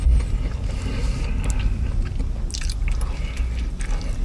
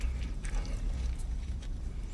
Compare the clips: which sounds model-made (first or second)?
second